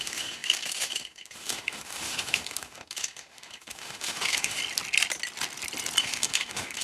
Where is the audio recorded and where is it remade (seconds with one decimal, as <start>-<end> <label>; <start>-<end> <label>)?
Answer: 0.0-4.6 remade; 4.6-6.0 recorded; 6.0-6.8 remade